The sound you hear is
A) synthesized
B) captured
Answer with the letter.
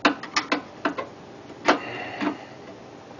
B